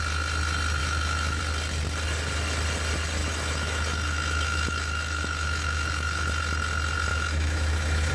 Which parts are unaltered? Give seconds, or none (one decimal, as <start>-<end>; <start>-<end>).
0.0-0.8; 1.4-3.2; 6.4-7.1